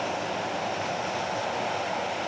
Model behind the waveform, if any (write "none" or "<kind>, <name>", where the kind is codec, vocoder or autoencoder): none